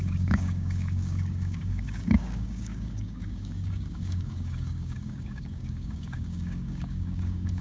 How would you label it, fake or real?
fake